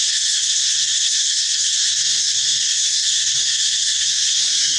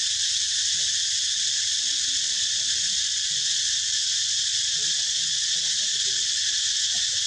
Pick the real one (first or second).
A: second